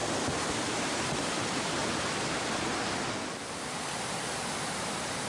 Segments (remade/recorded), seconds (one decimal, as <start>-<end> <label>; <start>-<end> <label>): 0.0-0.8 recorded; 0.8-1.8 remade; 1.8-4.7 recorded; 4.7-5.3 remade